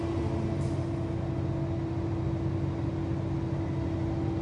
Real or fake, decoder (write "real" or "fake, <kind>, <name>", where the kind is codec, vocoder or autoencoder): real